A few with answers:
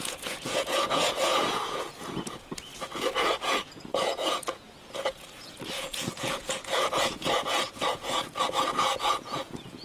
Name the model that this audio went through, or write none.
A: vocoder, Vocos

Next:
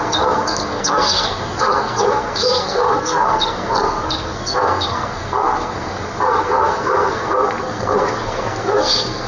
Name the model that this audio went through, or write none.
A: codec, SNAC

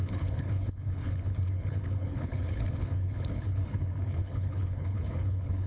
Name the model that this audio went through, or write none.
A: codec, HILCodec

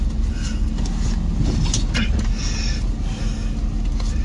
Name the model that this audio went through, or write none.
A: none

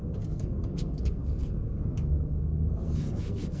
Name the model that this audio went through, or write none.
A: codec, SNAC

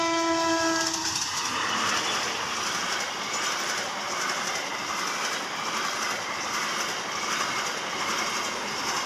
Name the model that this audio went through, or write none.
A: none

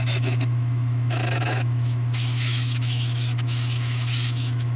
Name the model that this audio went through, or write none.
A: autoencoder, DAC-VAE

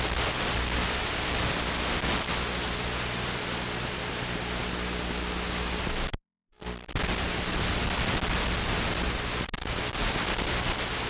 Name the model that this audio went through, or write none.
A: none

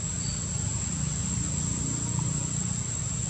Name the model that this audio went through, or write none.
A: none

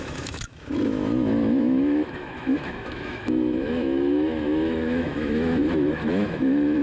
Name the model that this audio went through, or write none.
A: autoencoder, DAC-VAE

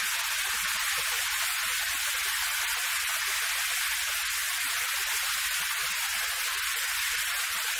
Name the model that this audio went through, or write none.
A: none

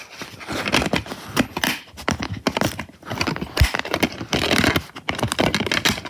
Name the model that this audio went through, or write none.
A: none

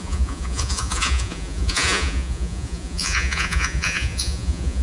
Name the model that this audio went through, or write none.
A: vocoder, Vocos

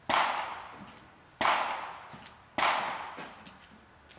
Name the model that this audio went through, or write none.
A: none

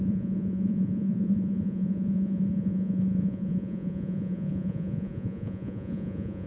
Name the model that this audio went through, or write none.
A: vocoder, Vocos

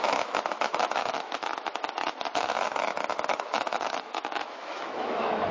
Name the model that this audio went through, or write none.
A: autoencoder, DAC-VAE